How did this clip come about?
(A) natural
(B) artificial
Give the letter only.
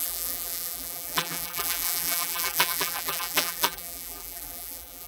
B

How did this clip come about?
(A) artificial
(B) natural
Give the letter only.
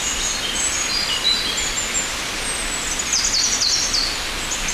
B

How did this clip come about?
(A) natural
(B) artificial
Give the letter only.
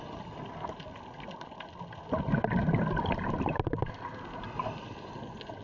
A